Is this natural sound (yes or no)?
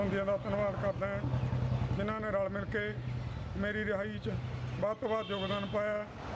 yes